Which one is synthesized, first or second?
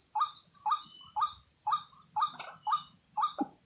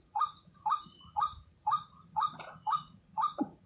second